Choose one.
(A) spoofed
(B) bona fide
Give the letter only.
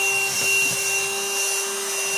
B